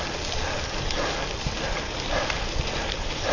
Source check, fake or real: real